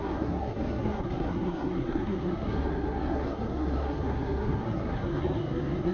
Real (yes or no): no